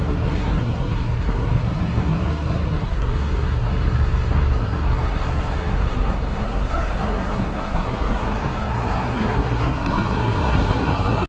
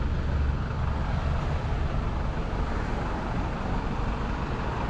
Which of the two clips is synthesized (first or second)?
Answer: first